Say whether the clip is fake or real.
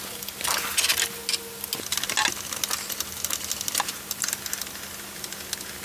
real